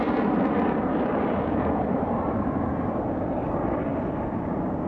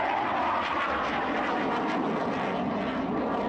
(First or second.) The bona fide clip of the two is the second